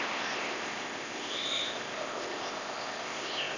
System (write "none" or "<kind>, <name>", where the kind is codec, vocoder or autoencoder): codec, ZipCodec